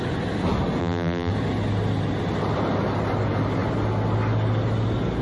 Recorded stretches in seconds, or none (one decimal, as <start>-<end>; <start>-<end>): 0.0-0.8; 1.3-5.2